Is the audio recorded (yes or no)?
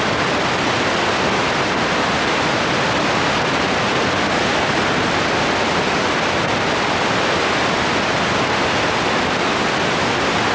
yes